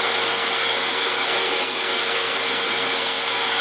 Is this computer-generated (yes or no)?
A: yes